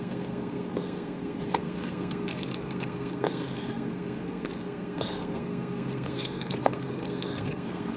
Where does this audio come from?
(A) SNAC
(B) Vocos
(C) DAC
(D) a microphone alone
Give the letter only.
A